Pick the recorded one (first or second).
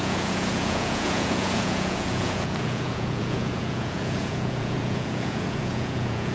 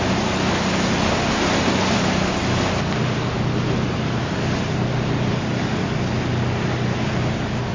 second